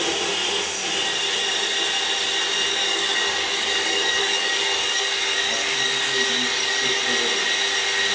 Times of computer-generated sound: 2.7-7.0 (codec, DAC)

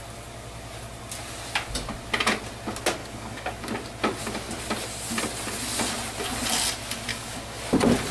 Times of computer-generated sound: 3.0-3.7 (codec, DAC); 7.1-7.6

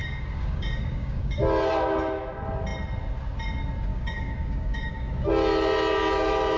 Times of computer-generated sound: 0.0-1.4 (codec, DAC); 3.9-5.3

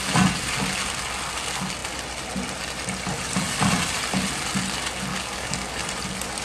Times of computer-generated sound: 5.1-5.7 (codec, DAC)